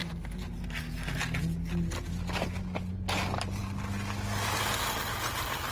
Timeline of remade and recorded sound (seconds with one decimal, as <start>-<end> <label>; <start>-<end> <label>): 0.0-5.7 recorded